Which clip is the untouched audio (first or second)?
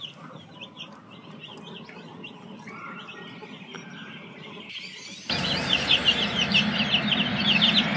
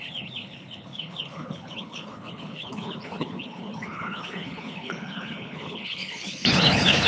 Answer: first